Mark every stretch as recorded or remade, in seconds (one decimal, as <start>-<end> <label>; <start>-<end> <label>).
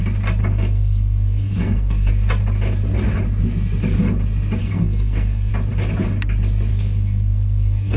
0.0-0.4 recorded; 0.4-2.1 remade; 2.1-4.6 recorded; 4.6-5.5 remade; 5.5-6.7 recorded; 6.7-8.0 remade